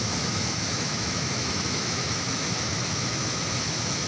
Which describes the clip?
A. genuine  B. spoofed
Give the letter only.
B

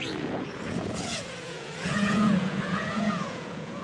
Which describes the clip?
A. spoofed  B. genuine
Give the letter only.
A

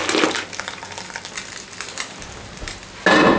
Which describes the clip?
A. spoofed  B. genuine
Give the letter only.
B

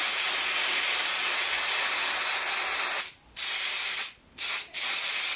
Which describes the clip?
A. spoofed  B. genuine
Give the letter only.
B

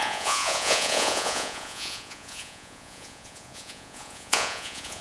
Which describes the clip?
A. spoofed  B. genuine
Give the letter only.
A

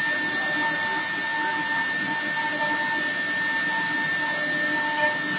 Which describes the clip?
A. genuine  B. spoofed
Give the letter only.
A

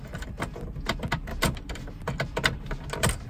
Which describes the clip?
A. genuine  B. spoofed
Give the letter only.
A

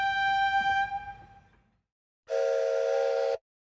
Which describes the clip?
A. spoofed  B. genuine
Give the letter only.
B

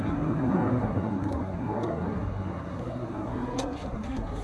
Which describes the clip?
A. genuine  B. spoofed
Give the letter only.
B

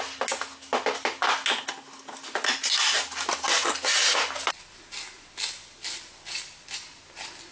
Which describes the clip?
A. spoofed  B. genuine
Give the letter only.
B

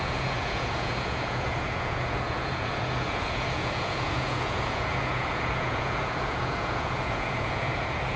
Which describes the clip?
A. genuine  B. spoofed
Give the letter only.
B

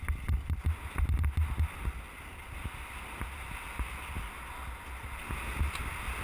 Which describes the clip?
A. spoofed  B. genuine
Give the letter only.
B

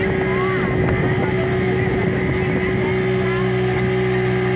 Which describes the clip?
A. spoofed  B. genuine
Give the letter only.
B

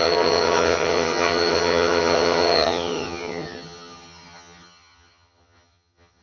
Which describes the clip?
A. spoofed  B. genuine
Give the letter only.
A